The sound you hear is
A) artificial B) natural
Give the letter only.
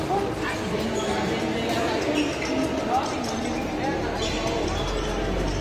B